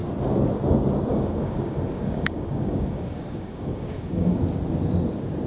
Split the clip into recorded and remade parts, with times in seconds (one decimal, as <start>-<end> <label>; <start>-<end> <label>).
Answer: 0.0-1.1 recorded; 1.1-4.4 remade; 4.4-5.5 recorded

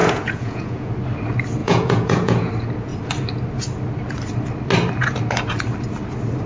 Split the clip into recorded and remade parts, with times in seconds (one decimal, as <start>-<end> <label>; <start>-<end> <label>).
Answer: 0.0-0.9 remade; 0.9-1.6 recorded; 1.6-2.5 remade; 2.5-6.5 recorded

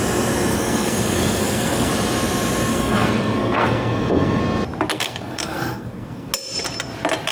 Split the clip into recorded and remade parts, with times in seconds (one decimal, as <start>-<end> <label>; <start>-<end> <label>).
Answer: 0.0-0.5 recorded; 0.5-1.9 remade; 1.9-2.7 recorded; 2.7-4.4 remade; 4.4-4.9 recorded; 4.9-6.3 remade; 6.3-7.3 recorded

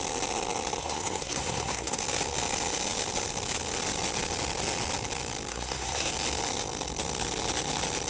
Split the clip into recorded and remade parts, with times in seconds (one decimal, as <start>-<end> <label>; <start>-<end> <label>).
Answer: 0.0-0.8 recorded; 0.8-2.0 remade; 2.0-5.5 recorded; 5.5-6.1 remade; 6.1-8.1 recorded